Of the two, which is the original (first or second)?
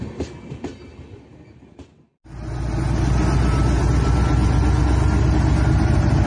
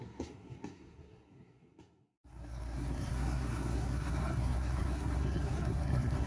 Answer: first